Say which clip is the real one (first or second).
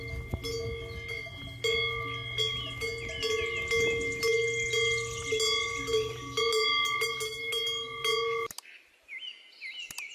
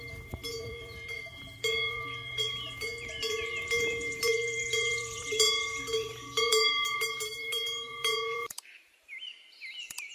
first